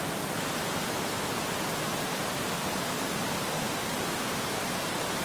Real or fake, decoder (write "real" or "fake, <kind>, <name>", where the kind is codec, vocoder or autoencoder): real